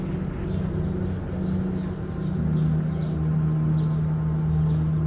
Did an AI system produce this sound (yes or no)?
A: no